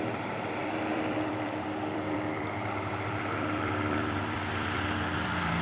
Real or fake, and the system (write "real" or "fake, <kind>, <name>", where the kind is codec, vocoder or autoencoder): fake, vocoder, BigVGAN v2